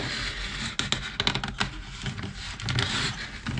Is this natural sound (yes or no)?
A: yes